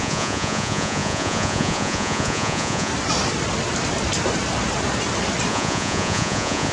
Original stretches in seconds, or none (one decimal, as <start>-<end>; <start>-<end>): 2.9-5.5